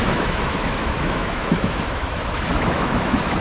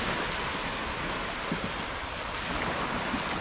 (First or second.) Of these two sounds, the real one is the second